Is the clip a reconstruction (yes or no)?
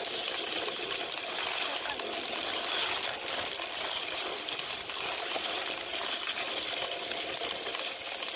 no